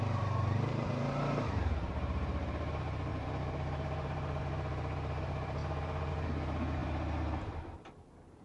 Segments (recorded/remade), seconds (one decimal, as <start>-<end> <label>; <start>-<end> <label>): 0.0-8.4 remade